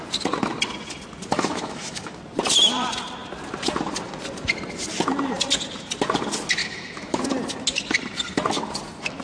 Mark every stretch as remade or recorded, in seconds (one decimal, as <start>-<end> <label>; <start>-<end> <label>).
0.0-1.3 recorded; 1.3-2.2 remade; 2.2-6.6 recorded; 6.6-7.2 remade; 7.2-9.2 recorded